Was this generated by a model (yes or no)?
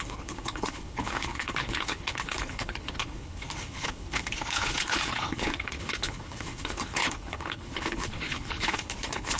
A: yes